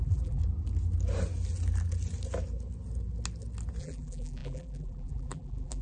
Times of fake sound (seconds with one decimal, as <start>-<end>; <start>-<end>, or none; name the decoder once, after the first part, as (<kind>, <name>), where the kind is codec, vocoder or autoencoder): 0.0-0.4 (vocoder, BigVGAN v2); 3.8-5.8